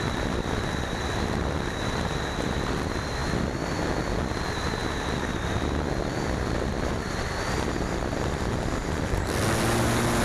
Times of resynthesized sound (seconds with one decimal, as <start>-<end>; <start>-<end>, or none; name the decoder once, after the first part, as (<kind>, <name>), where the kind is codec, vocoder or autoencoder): none